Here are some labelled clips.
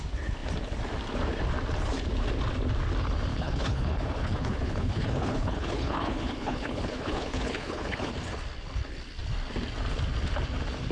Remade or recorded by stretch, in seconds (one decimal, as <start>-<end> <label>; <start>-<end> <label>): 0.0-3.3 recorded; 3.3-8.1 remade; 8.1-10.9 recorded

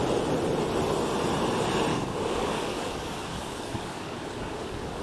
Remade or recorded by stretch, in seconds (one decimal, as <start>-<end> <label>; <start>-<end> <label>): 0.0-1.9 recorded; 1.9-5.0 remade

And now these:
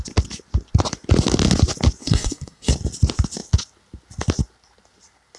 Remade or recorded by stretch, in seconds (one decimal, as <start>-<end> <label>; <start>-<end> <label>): 0.0-2.0 recorded; 2.0-2.7 remade; 2.7-5.4 recorded